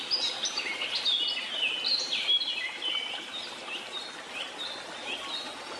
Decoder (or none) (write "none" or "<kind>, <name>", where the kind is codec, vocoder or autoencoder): none